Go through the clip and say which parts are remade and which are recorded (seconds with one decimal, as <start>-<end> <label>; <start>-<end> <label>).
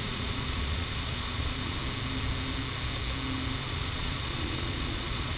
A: 0.0-1.8 remade; 1.8-3.6 recorded; 3.6-5.4 remade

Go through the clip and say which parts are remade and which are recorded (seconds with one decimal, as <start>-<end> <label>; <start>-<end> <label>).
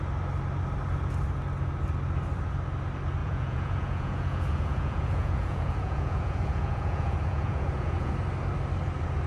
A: 0.0-3.2 recorded; 3.2-8.1 remade; 8.1-9.3 recorded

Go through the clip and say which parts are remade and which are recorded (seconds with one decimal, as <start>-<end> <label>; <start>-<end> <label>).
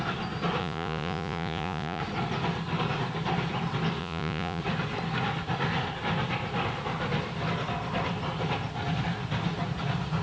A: 0.0-0.6 recorded; 0.6-2.0 remade; 2.0-4.0 recorded; 4.0-4.6 remade; 4.6-10.2 recorded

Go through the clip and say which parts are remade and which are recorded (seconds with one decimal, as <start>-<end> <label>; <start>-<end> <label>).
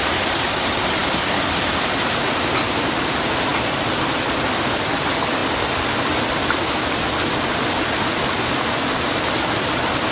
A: 0.0-10.1 recorded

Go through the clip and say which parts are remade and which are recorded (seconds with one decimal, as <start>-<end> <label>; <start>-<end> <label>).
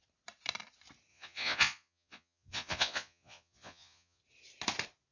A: 0.0-1.1 recorded; 1.1-4.2 remade; 4.2-5.1 recorded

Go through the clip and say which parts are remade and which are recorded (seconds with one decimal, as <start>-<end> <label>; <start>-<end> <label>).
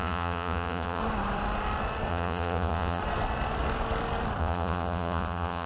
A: 0.0-1.0 remade; 1.0-2.1 recorded; 2.1-3.0 remade; 3.0-4.4 recorded; 4.4-5.7 remade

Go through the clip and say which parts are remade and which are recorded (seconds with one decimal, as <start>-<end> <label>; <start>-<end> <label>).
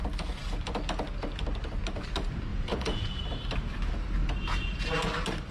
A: 0.0-2.5 recorded; 2.5-3.2 remade; 3.2-4.2 recorded; 4.2-4.8 remade; 4.8-5.5 recorded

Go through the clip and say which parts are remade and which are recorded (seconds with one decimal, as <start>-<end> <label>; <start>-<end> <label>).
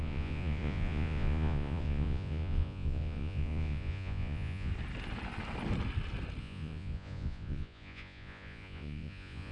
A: 0.0-4.7 remade; 4.7-6.4 recorded; 6.4-9.5 remade